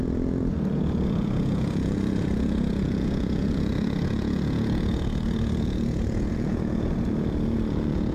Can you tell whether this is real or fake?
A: fake